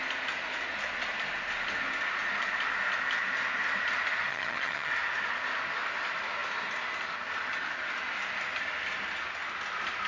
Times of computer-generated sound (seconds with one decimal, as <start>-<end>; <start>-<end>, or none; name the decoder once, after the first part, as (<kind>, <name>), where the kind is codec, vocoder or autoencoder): 4.3-4.9 (vocoder, HiFi-GAN)